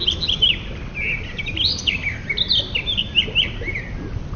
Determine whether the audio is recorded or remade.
recorded